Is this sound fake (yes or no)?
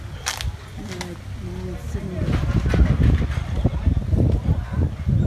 no